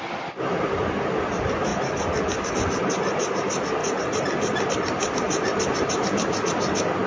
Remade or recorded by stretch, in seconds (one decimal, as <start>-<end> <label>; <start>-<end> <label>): 0.0-7.1 recorded